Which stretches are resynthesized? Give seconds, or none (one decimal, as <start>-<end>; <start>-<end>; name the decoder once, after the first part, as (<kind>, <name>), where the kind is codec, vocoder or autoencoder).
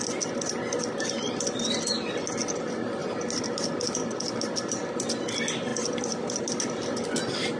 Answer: none